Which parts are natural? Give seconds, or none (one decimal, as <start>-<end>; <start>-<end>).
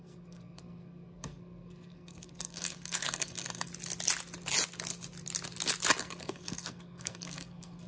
3.7-6.0